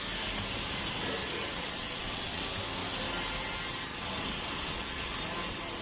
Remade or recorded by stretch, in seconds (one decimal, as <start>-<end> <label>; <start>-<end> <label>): 0.0-1.2 recorded; 1.2-2.4 remade; 2.4-3.9 recorded; 3.9-5.2 remade; 5.2-5.8 recorded